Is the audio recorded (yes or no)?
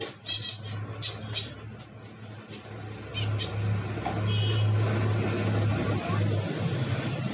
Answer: yes